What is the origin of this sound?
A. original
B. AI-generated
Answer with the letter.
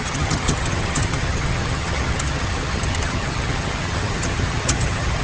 B